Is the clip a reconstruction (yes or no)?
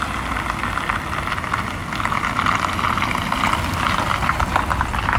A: no